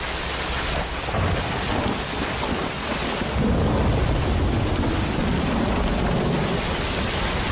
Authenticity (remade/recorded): recorded